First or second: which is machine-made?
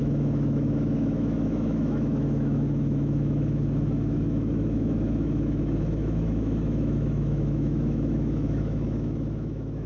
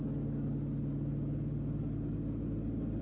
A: first